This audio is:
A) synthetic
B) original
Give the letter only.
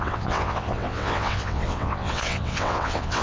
A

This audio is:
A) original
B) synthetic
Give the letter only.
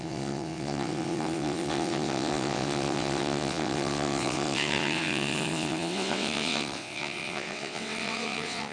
B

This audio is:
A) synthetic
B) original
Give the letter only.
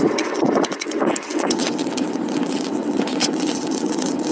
A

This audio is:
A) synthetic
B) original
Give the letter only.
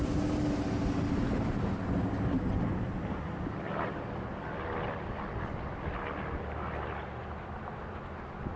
B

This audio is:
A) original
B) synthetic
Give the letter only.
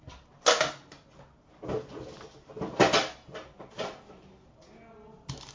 A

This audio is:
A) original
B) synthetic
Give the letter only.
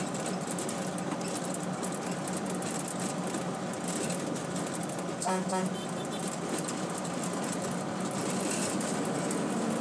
A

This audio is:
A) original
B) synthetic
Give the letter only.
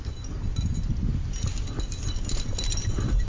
A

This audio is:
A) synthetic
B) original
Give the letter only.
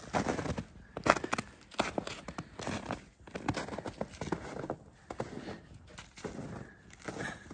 B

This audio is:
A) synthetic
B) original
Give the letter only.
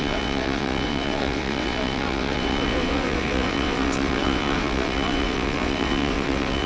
A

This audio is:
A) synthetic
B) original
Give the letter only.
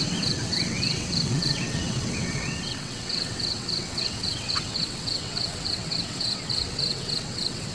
A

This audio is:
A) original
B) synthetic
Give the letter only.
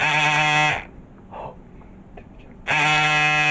A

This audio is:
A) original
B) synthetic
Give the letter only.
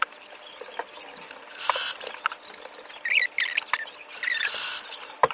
A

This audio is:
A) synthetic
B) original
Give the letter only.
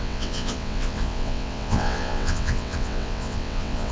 A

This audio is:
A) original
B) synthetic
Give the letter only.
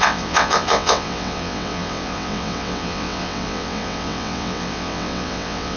B